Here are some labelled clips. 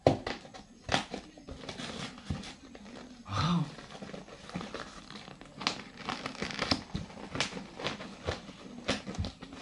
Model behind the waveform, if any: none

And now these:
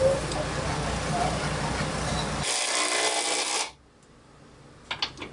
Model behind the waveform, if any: none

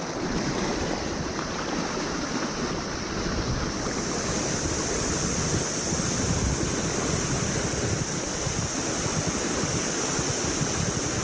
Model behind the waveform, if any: none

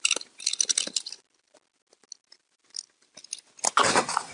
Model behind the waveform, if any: none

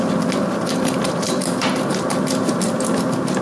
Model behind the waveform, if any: none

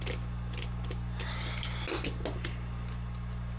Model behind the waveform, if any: none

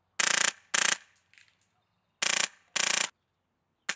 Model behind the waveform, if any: none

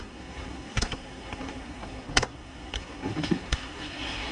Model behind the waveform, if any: codec, SNAC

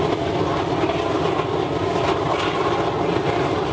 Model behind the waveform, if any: none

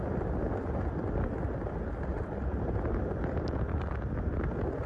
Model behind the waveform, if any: none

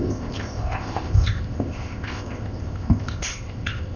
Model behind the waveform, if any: codec, ZipCodec